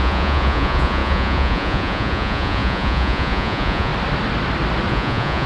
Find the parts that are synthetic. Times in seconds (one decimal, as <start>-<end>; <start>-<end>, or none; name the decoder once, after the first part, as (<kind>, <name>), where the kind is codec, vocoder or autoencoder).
0.0-3.9 (vocoder, Vocos); 4.9-5.5